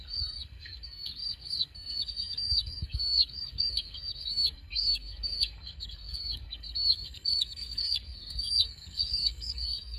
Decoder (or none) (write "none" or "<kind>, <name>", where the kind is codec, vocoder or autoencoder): codec, SNAC